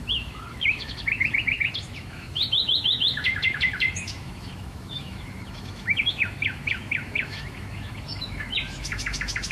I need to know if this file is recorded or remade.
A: remade